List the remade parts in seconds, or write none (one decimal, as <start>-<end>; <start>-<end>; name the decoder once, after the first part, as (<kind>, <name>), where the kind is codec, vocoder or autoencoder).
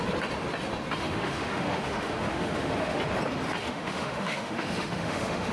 1.0-3.0 (autoencoder, DAC-VAE); 3.6-5.5